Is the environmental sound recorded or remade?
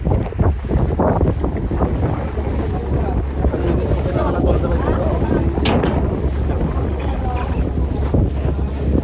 recorded